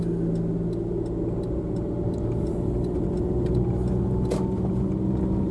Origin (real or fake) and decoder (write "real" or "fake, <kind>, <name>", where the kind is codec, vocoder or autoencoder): real